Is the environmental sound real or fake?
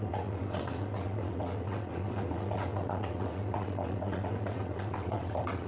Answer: fake